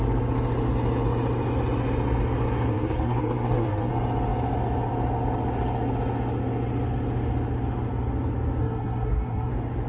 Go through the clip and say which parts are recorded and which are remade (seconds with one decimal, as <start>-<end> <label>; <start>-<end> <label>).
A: 0.0-2.7 recorded; 2.7-3.9 remade; 3.9-8.6 recorded; 8.6-9.5 remade; 9.5-9.9 recorded